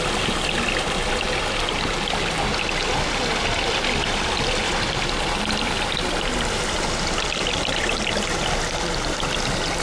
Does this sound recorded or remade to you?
recorded